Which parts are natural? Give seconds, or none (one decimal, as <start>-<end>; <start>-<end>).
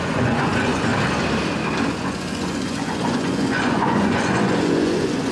0.9-2.0